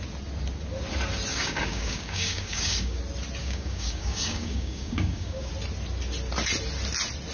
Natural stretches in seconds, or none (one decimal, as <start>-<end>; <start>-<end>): 0.0-1.3; 3.0-3.4; 5.5-7.3